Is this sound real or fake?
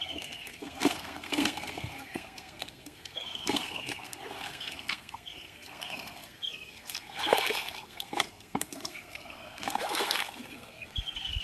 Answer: fake